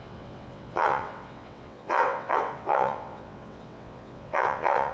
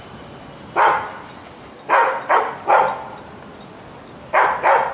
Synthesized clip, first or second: first